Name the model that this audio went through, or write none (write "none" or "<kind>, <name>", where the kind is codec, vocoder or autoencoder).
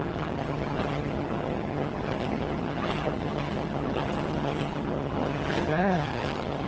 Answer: vocoder, HiFi-GAN